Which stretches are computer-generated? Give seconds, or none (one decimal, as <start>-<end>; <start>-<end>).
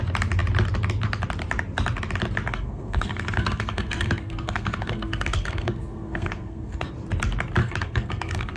2.5-6.9; 7.6-8.6